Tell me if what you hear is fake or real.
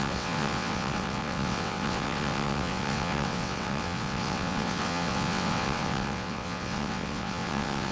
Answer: fake